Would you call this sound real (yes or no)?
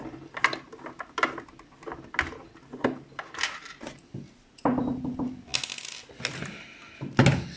yes